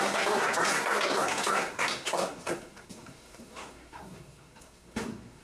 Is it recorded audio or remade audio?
remade